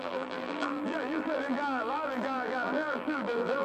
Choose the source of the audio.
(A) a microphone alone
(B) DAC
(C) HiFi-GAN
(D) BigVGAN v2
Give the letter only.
D